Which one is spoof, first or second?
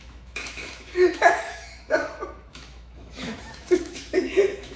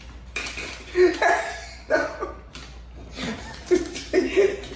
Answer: first